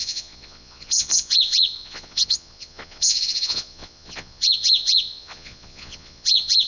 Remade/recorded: remade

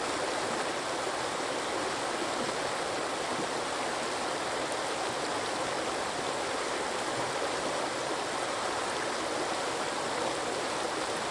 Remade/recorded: recorded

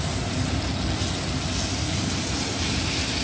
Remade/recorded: recorded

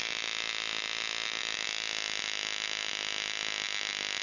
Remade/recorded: recorded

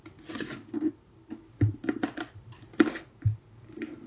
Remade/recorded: recorded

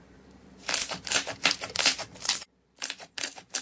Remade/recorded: remade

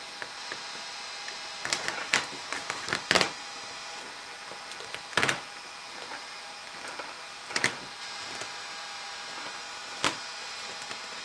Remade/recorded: remade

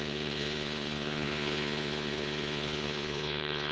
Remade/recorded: remade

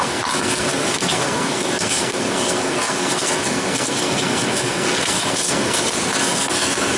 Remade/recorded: remade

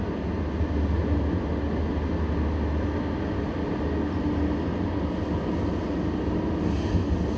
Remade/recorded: recorded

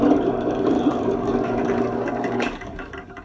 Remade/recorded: remade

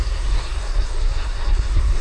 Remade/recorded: remade